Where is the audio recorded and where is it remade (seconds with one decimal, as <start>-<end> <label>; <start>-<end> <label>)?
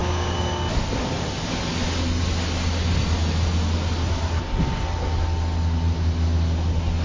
0.0-0.5 remade; 0.5-7.0 recorded